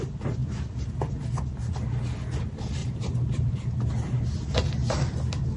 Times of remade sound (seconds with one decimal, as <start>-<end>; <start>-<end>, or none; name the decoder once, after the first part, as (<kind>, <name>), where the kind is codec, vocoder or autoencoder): 2.8-3.5 (vocoder, BigVGAN v2)